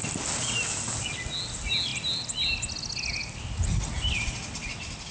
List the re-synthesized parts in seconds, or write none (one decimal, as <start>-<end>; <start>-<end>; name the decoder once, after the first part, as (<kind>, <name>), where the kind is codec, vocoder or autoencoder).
none